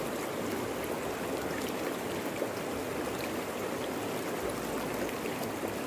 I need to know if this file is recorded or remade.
recorded